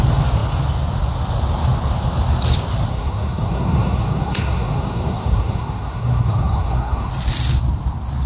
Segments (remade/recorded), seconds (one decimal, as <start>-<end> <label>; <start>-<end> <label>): 0.0-2.9 recorded; 2.9-7.1 remade; 7.1-8.3 recorded